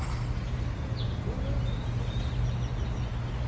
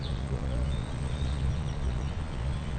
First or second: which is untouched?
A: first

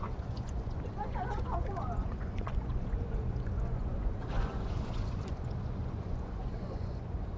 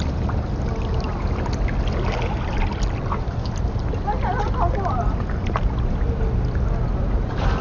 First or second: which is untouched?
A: second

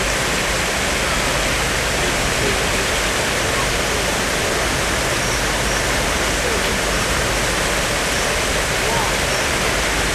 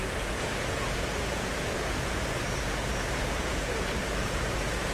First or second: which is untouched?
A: first